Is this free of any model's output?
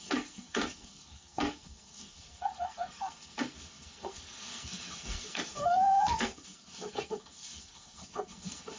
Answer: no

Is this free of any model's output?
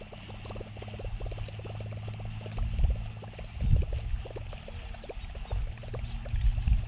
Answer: yes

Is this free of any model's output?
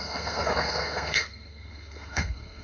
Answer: no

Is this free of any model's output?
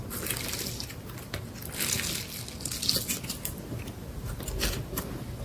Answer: yes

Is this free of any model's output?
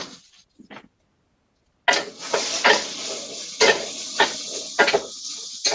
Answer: yes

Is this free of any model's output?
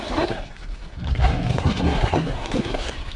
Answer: no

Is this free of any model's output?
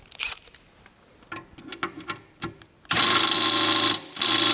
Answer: yes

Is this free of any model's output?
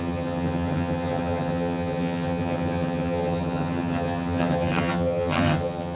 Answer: no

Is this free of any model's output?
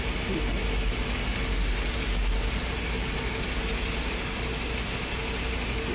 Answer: yes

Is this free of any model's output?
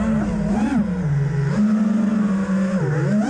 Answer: yes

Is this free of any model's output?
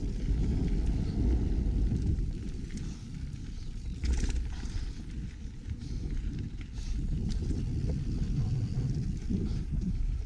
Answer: yes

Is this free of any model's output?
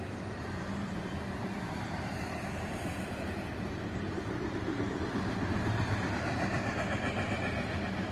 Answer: no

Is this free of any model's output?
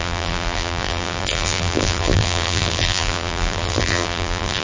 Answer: no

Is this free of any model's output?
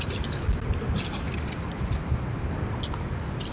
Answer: yes